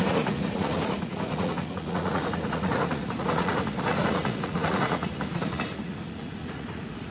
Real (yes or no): no